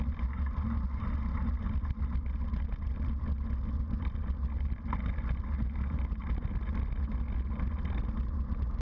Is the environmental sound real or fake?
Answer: real